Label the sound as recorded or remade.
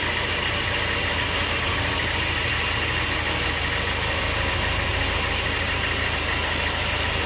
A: recorded